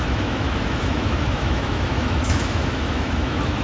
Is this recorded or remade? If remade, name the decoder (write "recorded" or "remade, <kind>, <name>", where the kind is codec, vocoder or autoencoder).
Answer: remade, autoencoder, DAC-VAE